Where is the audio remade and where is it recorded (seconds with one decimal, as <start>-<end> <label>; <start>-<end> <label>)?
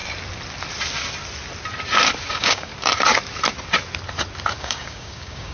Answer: 0.0-2.3 recorded; 2.3-2.7 remade; 2.7-4.6 recorded; 4.6-5.5 remade